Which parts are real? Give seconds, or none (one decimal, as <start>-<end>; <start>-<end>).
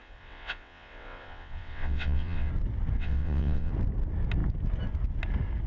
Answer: 2.5-3.0; 3.7-5.7